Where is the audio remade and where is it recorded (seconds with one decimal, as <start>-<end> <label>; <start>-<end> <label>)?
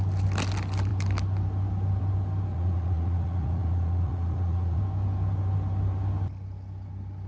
0.0-2.5 recorded; 2.5-4.8 remade; 4.8-7.3 recorded